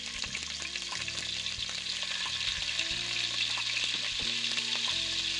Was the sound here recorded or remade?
recorded